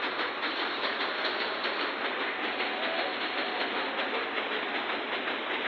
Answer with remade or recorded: recorded